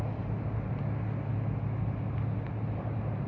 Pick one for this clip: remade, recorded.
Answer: recorded